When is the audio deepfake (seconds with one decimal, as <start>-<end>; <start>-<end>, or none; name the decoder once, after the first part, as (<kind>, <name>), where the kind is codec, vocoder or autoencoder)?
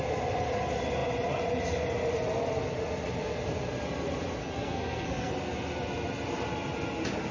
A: 4.4-5.3 (codec, SNAC)